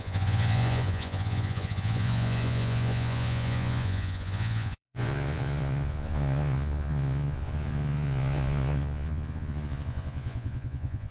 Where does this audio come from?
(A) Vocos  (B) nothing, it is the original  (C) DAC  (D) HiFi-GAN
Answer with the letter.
A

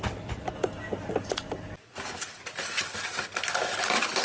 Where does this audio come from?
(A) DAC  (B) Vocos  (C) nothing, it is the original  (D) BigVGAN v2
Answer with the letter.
C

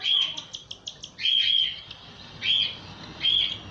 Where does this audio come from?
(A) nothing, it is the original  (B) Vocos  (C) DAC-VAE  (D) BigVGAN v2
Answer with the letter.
A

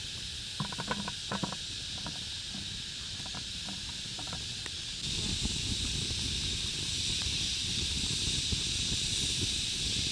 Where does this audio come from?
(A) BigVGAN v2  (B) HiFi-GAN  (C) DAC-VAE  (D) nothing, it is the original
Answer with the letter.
A